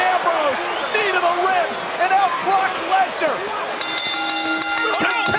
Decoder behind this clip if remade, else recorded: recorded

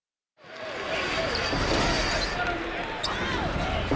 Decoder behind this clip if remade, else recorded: recorded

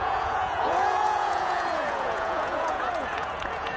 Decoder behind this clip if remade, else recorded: remade, vocoder, Vocos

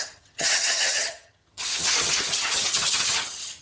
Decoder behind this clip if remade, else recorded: remade, vocoder, HiFi-GAN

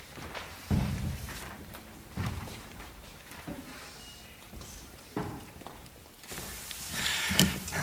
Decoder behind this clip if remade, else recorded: remade, vocoder, BigVGAN v2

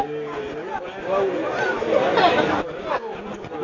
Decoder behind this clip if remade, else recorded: recorded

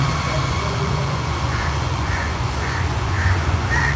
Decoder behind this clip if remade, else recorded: remade, vocoder, Vocos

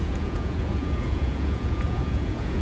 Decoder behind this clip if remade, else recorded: remade, vocoder, Vocos